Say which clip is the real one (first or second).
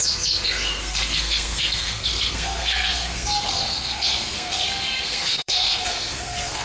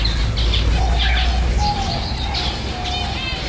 second